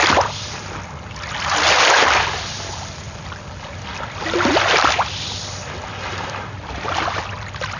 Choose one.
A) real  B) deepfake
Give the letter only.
A